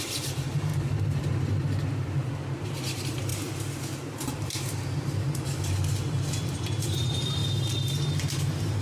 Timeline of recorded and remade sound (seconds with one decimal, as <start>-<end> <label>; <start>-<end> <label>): 0.0-0.7 remade; 0.7-2.5 recorded; 2.5-3.3 remade; 3.3-4.3 recorded; 4.3-7.4 remade; 7.4-8.4 recorded; 8.4-8.8 remade